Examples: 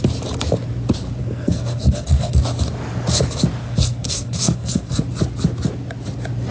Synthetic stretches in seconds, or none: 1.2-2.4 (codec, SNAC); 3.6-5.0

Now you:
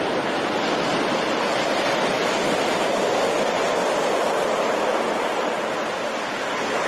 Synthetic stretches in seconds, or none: 4.9-5.5 (vocoder, BigVGAN v2)

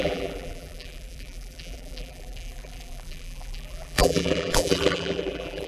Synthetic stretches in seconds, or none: 0.0-5.7 (vocoder, BigVGAN v2)

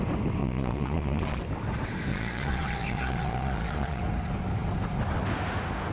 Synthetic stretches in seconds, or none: 0.4-1.4 (vocoder, Vocos); 2.1-4.0